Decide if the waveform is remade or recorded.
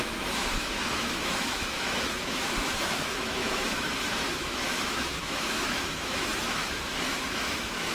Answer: remade